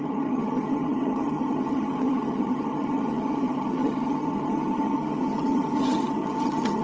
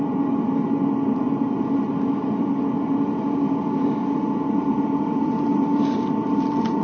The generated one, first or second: first